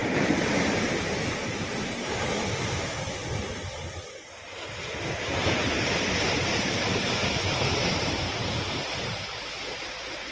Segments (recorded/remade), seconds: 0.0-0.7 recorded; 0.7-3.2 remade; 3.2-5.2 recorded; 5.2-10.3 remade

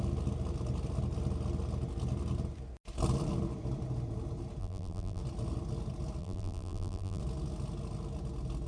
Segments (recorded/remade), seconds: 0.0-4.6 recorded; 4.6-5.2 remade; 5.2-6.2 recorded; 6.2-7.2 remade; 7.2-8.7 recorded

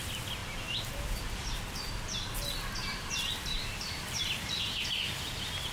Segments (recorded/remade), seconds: 0.0-0.4 recorded; 0.4-1.6 remade; 1.6-2.9 recorded; 2.9-5.7 remade

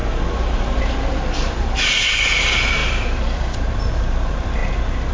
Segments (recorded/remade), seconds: 0.0-5.1 remade

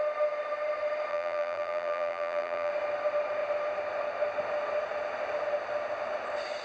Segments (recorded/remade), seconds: 0.0-1.1 recorded; 1.1-2.7 remade; 2.7-6.6 recorded

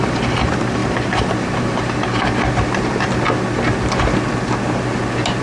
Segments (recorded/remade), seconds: 0.0-2.1 remade; 2.1-5.4 recorded

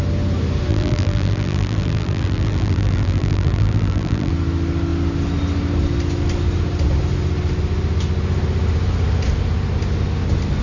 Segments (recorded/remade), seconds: 0.0-0.7 recorded; 0.7-4.3 remade; 4.3-10.6 recorded